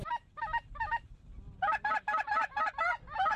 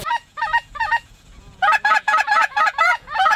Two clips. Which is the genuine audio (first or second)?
first